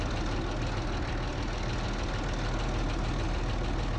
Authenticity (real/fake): real